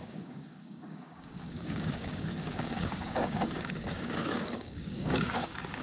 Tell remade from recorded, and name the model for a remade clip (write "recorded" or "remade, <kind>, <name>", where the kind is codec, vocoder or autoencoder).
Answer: remade, codec, DAC